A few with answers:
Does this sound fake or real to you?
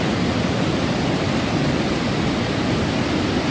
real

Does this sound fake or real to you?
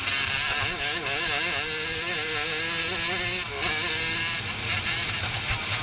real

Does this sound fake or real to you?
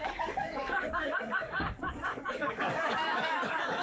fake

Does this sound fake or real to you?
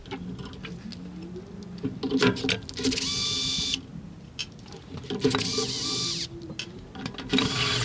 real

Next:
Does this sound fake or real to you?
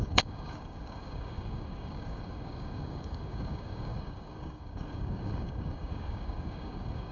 fake